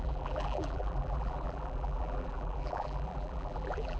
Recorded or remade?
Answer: remade